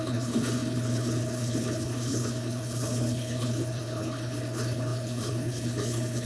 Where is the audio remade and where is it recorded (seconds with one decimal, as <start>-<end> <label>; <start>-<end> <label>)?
0.0-6.3 remade